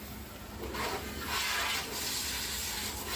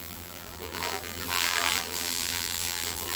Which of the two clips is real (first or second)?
first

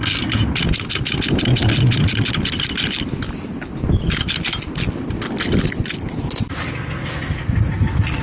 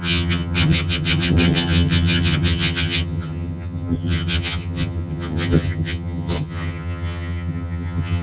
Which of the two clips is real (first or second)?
first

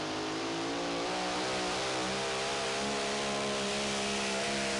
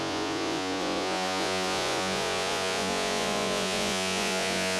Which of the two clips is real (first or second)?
first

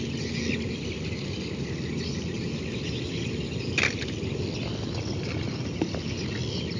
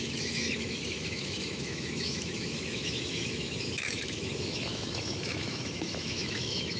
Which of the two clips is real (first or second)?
first